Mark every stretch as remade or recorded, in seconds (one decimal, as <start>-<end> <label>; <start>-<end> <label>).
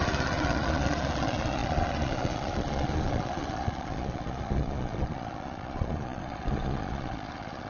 0.0-7.7 remade